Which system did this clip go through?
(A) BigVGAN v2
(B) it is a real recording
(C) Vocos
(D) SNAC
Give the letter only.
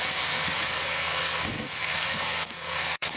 D